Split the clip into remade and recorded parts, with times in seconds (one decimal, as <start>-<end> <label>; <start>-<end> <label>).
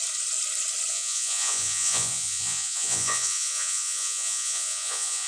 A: 0.0-0.9 recorded; 0.9-5.3 remade